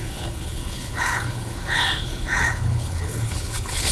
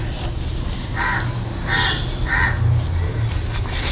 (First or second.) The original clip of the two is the second